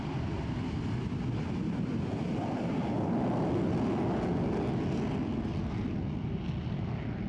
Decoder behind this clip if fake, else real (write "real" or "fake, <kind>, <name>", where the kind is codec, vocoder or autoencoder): real